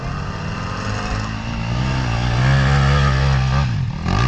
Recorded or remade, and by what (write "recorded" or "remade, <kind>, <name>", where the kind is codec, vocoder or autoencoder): recorded